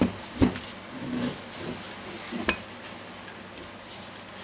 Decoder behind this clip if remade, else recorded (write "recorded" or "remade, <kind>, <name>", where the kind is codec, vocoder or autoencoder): recorded